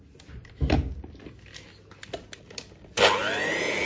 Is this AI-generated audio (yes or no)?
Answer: no